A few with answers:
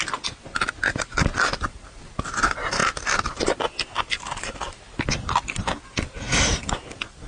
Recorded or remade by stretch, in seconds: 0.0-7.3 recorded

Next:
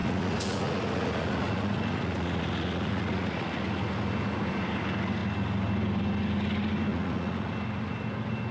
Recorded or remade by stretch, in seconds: 0.0-3.6 remade; 3.6-6.9 recorded; 6.9-7.5 remade; 7.5-8.5 recorded

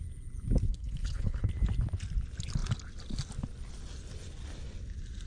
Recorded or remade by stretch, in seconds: 0.0-0.7 recorded; 0.7-1.5 remade; 1.5-5.3 recorded

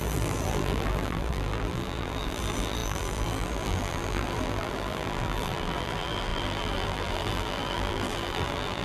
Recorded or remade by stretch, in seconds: 0.0-8.8 remade